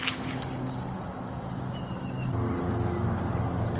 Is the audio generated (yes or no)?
no